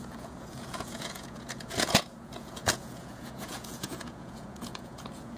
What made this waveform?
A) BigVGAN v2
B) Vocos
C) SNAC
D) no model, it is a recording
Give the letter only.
B